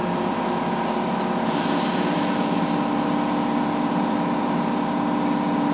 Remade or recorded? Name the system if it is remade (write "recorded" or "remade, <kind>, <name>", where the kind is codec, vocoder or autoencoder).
recorded